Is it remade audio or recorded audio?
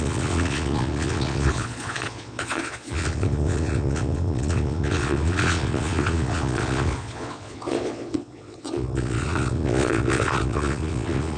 remade